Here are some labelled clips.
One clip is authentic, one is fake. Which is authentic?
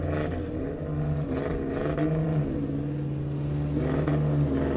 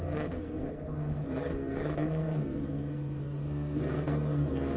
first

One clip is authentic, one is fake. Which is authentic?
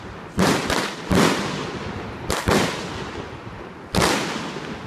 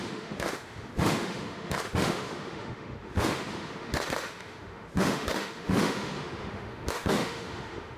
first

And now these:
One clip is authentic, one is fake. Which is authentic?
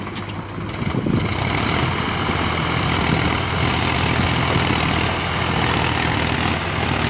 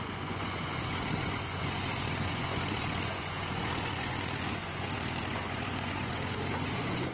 first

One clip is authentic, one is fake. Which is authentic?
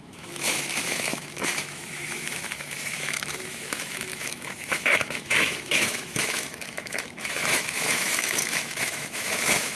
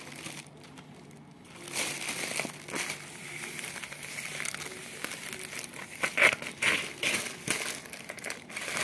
second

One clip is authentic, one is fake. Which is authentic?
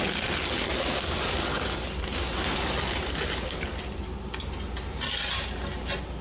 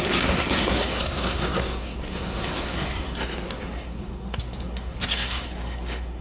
first